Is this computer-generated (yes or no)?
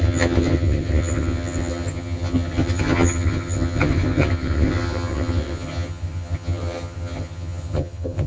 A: yes